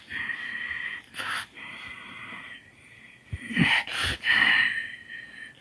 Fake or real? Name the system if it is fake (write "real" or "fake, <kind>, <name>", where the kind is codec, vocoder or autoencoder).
real